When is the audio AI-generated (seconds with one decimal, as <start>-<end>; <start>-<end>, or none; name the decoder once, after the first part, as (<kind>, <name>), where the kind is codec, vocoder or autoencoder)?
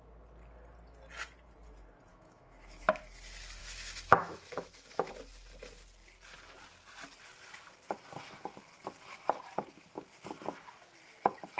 2.1-3.0 (autoencoder, DAC-VAE); 3.6-5.1